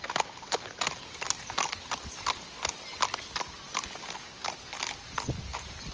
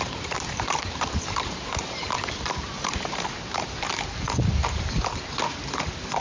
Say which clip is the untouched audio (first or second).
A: first